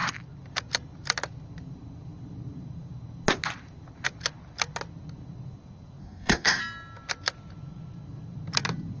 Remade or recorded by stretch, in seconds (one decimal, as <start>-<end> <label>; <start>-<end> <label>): 0.0-6.0 recorded; 6.0-6.6 remade; 6.6-9.0 recorded